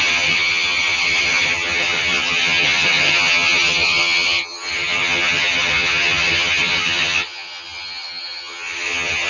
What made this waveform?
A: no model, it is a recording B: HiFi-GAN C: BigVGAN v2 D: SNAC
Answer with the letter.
B